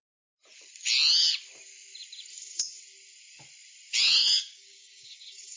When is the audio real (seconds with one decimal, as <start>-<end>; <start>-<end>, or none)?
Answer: 0.0-2.3; 2.8-4.2